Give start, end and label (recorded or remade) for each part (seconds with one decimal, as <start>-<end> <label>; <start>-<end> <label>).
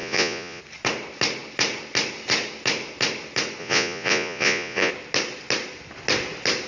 0.0-0.6 remade; 0.6-3.6 recorded; 3.6-4.9 remade; 4.9-6.7 recorded